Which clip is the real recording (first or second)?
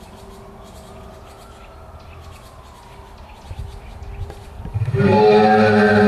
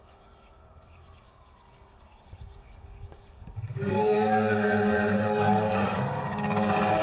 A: first